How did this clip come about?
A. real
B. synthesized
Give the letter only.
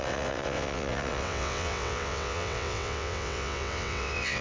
B